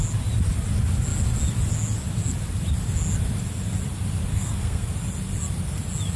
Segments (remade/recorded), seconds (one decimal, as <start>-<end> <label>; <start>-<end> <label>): 0.0-4.3 recorded; 4.3-4.9 remade; 4.9-6.2 recorded